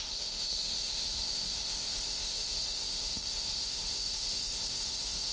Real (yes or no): no